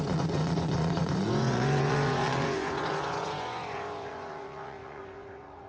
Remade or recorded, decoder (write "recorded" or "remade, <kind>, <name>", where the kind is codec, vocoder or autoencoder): remade, vocoder, Vocos